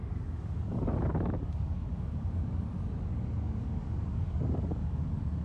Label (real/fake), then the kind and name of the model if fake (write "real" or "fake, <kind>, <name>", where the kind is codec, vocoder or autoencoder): fake, codec, DAC